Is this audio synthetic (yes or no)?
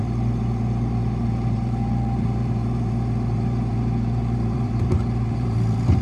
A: yes